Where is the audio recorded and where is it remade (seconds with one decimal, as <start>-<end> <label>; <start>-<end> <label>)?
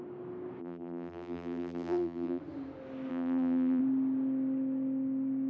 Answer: 0.0-0.6 recorded; 0.6-2.4 remade; 2.4-3.1 recorded; 3.1-3.8 remade; 3.8-5.5 recorded